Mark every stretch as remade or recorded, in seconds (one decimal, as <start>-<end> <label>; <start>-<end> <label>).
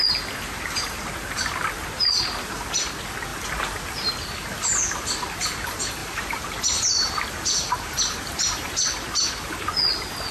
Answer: 0.0-6.0 recorded; 6.0-8.7 remade; 8.7-10.3 recorded